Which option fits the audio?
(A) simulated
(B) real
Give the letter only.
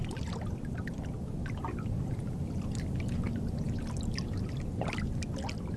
B